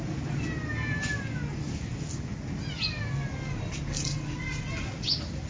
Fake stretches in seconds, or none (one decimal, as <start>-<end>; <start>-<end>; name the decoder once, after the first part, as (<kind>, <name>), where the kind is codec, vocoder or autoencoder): none